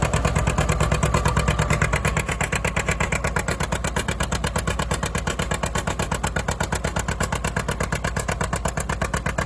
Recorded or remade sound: recorded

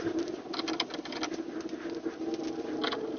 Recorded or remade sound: recorded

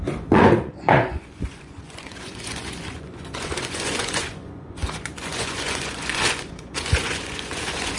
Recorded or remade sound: remade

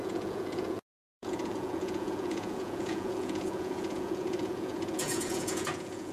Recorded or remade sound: remade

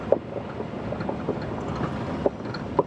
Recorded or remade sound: recorded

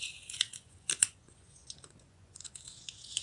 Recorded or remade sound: remade